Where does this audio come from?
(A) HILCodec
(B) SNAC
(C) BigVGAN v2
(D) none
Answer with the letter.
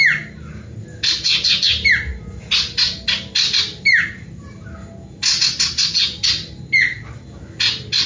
D